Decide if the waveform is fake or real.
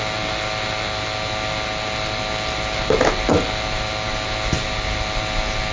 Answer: real